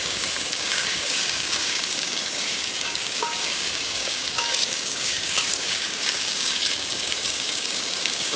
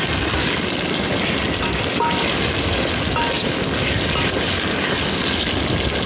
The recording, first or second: second